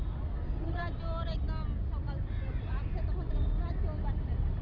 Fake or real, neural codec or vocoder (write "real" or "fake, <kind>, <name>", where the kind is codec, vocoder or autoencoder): real